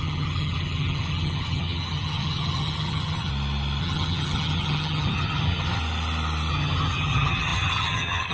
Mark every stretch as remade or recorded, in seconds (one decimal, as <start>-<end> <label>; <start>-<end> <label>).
0.0-3.3 remade; 3.3-3.8 recorded; 3.8-5.8 remade; 5.8-6.5 recorded; 6.5-8.3 remade